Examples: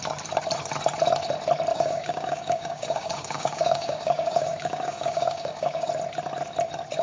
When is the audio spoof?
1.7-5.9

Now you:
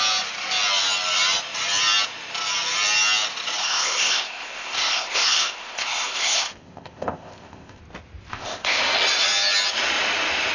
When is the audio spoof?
3.6-7.8; 8.3-8.8

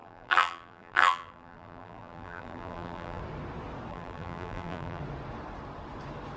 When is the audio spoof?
0.0-3.2; 3.9-5.0